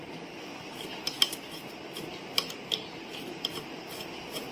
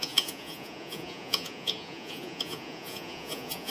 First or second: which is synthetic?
second